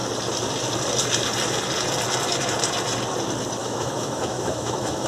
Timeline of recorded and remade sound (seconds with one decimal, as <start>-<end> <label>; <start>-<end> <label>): 0.0-3.6 recorded; 3.6-5.1 remade

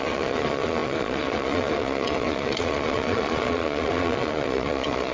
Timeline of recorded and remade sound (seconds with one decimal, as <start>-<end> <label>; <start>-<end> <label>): 0.0-5.1 remade

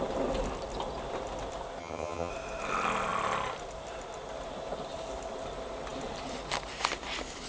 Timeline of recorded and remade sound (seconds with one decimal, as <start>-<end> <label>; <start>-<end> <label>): 0.0-1.8 recorded; 1.8-2.3 remade; 2.3-7.5 recorded

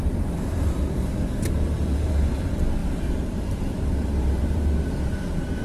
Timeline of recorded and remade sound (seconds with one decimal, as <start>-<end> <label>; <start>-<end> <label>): 0.0-2.8 recorded; 2.8-4.9 remade; 4.9-5.6 recorded

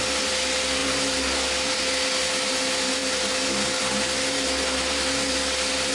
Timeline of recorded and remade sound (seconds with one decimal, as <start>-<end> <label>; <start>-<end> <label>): 0.0-5.9 recorded